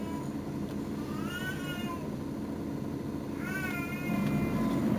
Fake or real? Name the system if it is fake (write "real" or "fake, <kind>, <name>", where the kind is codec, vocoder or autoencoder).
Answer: real